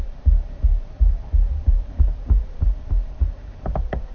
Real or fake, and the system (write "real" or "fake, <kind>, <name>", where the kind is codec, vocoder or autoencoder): fake, vocoder, BigVGAN v2